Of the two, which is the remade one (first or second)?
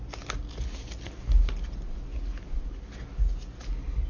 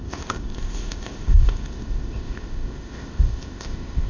second